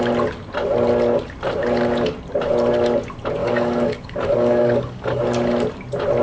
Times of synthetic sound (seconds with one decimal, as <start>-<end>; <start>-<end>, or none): 3.4-5.2